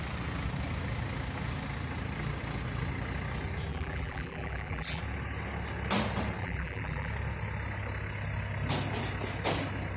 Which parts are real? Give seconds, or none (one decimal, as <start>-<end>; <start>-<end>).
0.0-3.7; 5.0-6.4; 7.1-10.0